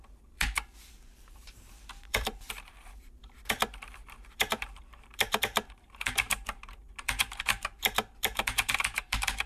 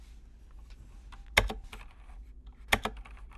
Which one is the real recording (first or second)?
second